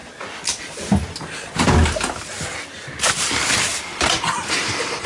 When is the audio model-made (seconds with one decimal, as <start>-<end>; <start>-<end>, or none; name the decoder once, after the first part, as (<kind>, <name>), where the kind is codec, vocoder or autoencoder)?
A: 3.1-5.1 (vocoder, BigVGAN v2)